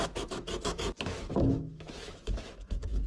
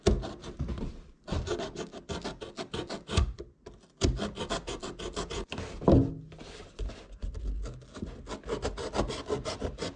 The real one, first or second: second